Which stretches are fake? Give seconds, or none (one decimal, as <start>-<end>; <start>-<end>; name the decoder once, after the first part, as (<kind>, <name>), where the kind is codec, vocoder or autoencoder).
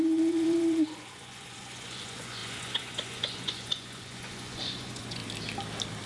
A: 0.0-5.2 (vocoder, Vocos)